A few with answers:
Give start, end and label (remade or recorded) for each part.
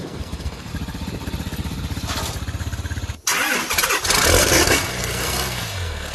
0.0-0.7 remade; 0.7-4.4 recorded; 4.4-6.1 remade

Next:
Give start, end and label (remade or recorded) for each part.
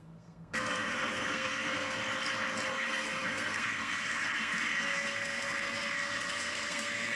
0.0-2.0 remade; 2.0-2.7 recorded; 2.7-7.2 remade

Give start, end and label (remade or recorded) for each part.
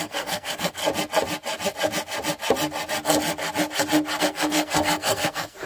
0.0-0.8 remade; 0.8-4.2 recorded; 4.2-5.7 remade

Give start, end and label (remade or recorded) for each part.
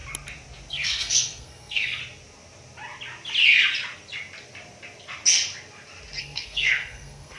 0.0-0.7 recorded; 0.7-2.0 remade; 2.0-6.2 recorded; 6.2-7.4 remade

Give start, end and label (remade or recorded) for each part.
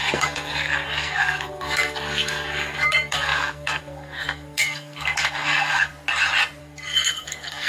0.0-5.9 remade; 5.9-6.6 recorded; 6.6-7.7 remade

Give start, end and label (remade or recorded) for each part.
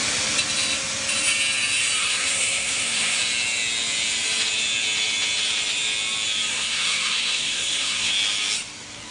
0.0-2.0 recorded; 2.0-3.2 remade; 3.2-6.5 recorded; 6.5-8.1 remade; 8.1-9.1 recorded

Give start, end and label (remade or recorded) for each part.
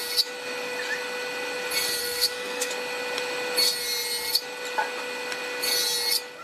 0.0-2.0 recorded; 2.0-2.7 remade; 2.7-6.4 recorded